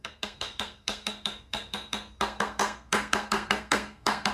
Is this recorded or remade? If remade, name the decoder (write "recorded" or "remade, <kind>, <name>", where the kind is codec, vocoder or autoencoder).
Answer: remade, codec, SNAC